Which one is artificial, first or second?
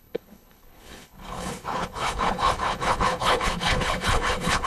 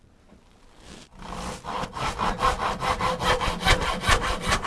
first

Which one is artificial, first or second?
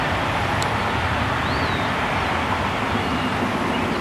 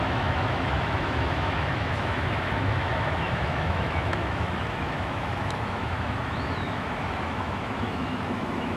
second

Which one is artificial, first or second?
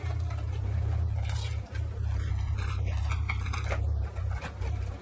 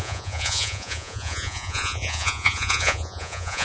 second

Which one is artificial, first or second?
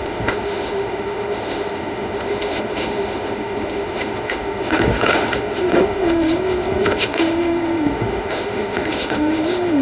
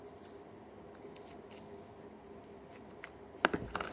first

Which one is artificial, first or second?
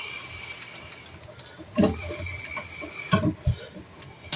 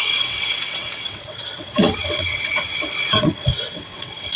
second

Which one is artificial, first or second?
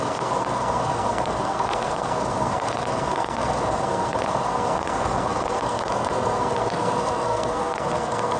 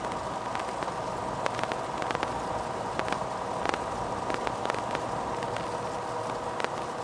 first